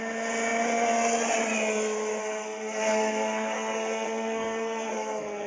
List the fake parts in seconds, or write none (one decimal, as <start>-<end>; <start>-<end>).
2.2-5.5